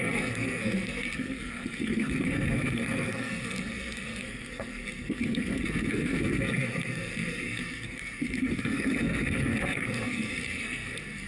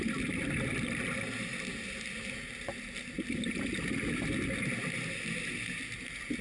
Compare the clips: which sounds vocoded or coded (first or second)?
first